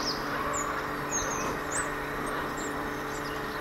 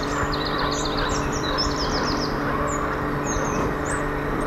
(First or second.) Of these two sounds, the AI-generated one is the second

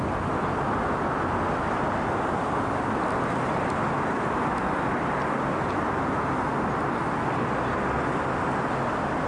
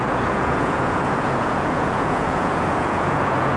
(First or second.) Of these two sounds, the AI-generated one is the second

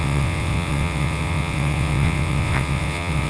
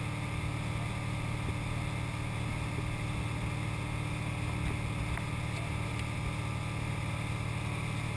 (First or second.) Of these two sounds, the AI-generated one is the first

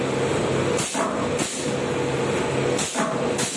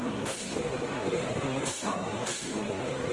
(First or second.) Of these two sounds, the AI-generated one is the second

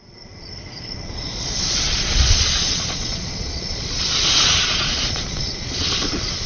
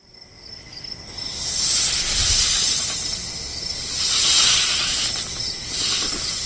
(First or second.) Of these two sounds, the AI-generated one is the first